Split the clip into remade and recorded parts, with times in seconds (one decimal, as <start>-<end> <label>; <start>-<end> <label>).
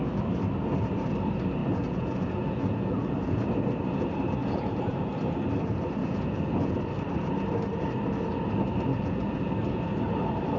0.0-1.6 recorded; 1.6-3.4 remade; 3.4-4.4 recorded; 4.4-5.1 remade; 5.1-6.0 recorded; 6.0-6.7 remade; 6.7-8.9 recorded; 8.9-9.5 remade; 9.5-10.6 recorded